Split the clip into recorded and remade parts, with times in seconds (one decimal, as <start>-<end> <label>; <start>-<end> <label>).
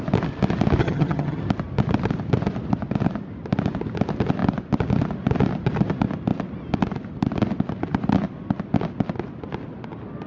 0.0-0.8 recorded; 0.8-1.4 remade; 1.4-10.3 recorded